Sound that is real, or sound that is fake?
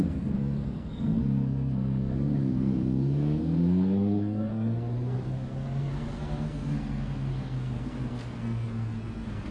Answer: fake